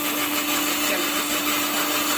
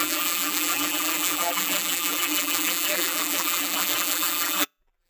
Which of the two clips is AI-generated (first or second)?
second